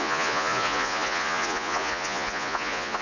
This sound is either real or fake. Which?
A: fake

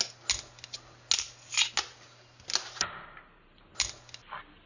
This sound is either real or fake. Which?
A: real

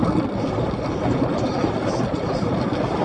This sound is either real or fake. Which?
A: real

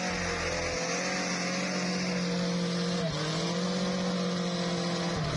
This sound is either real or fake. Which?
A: real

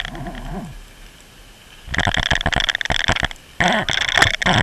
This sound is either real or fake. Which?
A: real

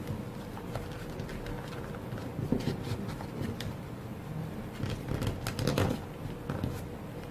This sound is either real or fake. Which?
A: real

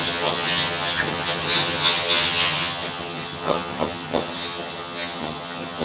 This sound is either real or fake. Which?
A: fake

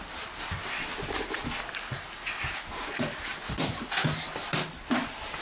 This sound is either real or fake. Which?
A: real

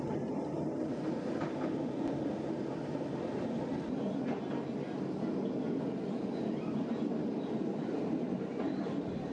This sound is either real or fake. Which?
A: real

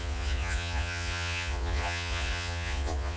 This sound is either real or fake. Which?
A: fake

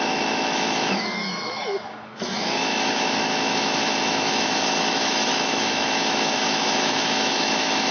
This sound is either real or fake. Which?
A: fake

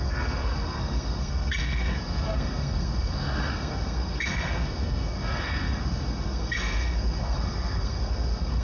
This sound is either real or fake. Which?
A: fake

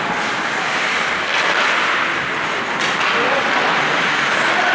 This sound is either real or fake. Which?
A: real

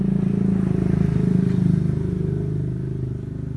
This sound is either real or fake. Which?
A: real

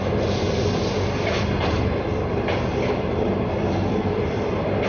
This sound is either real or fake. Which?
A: real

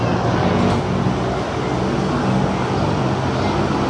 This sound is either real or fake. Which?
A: real